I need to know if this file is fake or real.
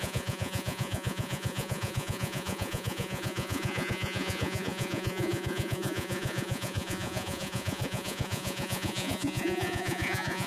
fake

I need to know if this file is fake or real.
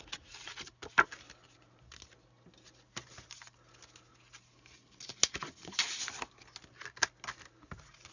real